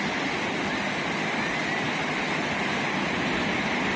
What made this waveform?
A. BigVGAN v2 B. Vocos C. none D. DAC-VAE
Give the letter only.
C